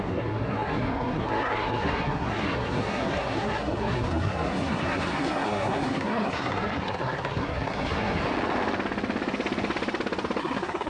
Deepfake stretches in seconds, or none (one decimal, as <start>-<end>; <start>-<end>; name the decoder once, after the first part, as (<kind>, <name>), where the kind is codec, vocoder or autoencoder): 0.0-8.2 (codec, SNAC); 10.4-10.9